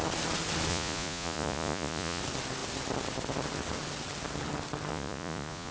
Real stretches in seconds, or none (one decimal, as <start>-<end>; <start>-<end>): 0.0-0.7; 2.2-4.9